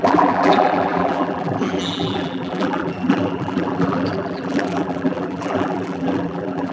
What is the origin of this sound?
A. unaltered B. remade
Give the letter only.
B